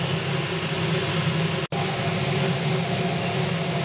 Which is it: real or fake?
real